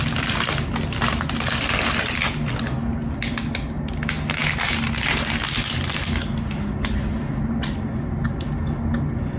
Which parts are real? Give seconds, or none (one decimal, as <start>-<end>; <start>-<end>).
0.0-9.4